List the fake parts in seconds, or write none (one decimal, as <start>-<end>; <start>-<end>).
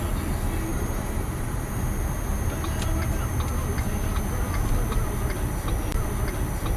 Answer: 0.7-1.7